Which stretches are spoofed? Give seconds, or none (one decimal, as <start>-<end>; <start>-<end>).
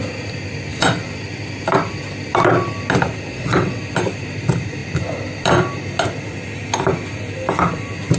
3.3-3.8